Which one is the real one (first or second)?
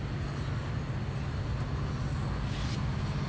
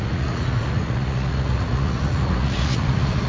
first